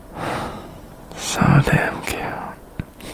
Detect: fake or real real